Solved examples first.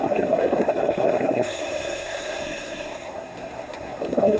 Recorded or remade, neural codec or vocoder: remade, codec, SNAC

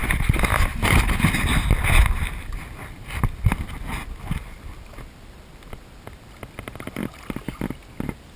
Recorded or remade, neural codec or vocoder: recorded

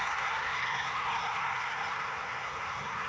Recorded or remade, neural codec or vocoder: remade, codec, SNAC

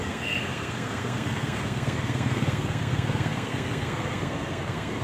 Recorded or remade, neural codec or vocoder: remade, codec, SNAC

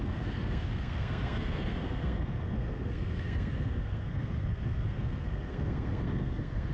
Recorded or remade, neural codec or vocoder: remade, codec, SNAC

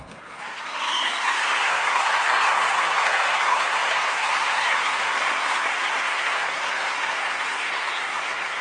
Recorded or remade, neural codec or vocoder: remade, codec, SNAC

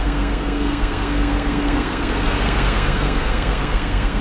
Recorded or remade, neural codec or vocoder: remade, codec, SNAC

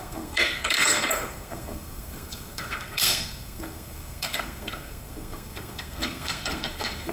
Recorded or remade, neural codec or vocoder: remade, codec, SNAC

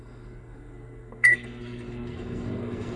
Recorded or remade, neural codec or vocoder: remade, codec, SNAC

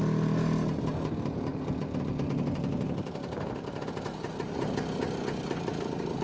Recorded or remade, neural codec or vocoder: recorded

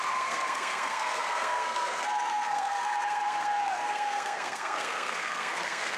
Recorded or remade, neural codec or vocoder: remade, codec, SNAC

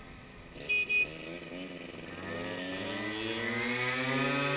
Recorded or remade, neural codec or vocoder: recorded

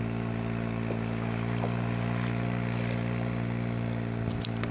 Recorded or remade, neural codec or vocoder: recorded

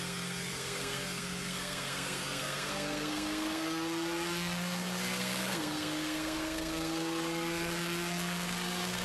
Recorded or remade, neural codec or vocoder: remade, codec, SNAC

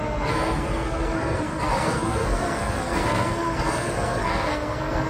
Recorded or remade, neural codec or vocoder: remade, codec, SNAC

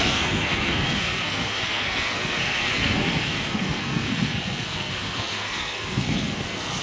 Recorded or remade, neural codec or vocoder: remade, codec, SNAC